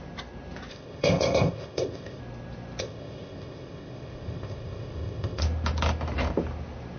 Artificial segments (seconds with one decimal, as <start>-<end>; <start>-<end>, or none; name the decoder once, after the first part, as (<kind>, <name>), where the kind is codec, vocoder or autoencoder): 0.7-2.2 (codec, ZipCodec); 2.8-5.4